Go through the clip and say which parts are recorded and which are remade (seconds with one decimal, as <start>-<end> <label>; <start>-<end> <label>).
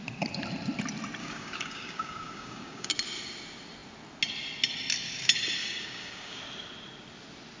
0.0-1.2 recorded; 1.2-2.9 remade; 2.9-5.6 recorded; 5.6-6.4 remade; 6.4-7.6 recorded